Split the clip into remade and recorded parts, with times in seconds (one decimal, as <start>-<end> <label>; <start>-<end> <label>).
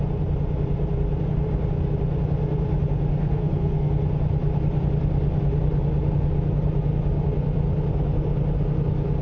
0.0-3.2 recorded; 3.2-3.9 remade; 3.9-9.2 recorded